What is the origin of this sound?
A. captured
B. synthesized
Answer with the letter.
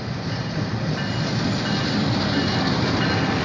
A